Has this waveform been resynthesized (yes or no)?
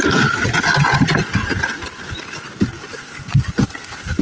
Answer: no